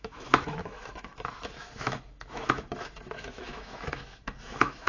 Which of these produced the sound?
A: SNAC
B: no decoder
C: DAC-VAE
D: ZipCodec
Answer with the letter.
C